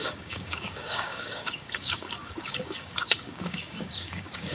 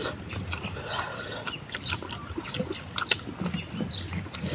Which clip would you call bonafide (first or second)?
second